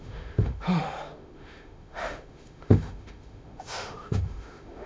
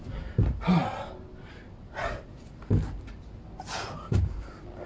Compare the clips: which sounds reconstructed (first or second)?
first